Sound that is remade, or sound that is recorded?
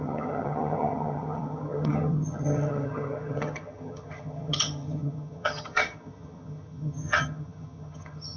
remade